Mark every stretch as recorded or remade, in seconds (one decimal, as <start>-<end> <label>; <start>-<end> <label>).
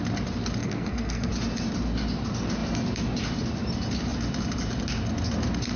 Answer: 0.0-0.6 recorded; 0.6-1.3 remade; 1.3-5.8 recorded